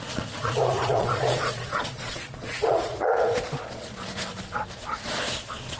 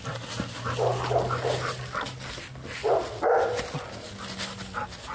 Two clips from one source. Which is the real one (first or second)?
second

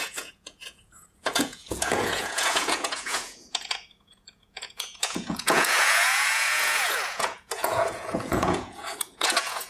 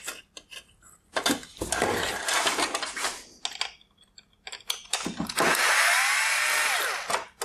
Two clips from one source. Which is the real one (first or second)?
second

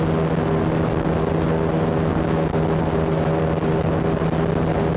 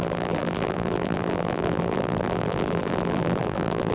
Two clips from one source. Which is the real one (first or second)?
first